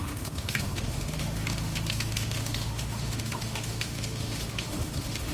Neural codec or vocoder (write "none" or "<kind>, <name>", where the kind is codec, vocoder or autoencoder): autoencoder, DAC-VAE